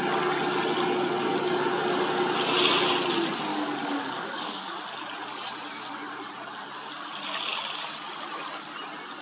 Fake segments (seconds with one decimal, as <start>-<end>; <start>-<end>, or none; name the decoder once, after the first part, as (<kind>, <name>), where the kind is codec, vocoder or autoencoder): 3.5-4.8 (codec, DAC)